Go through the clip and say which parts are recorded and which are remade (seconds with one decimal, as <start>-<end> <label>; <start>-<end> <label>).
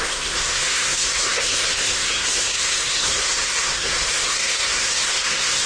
0.0-5.7 remade